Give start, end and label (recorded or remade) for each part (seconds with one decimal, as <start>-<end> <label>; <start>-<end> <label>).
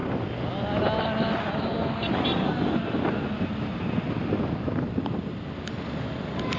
0.0-6.6 recorded